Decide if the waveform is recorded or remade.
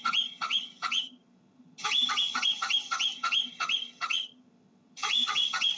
remade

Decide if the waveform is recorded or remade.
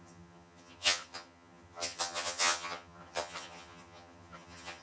remade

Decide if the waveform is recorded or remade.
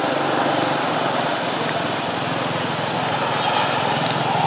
recorded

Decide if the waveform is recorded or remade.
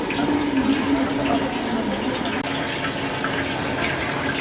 recorded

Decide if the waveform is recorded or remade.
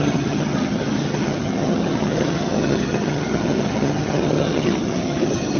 remade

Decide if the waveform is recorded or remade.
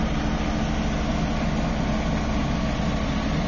recorded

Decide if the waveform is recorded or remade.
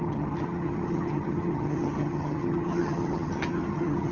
remade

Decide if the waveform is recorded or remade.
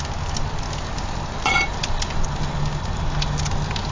recorded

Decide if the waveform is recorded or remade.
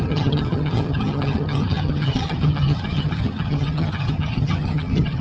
remade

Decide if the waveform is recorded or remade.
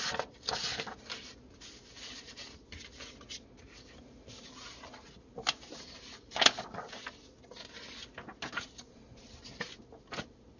recorded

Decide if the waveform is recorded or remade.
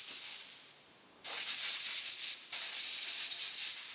recorded